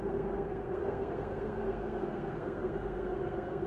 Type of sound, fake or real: fake